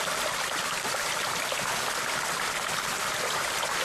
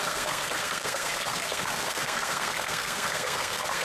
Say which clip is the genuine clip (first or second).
first